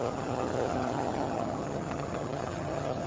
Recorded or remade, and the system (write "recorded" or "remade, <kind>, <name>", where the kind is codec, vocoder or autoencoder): remade, vocoder, HiFi-GAN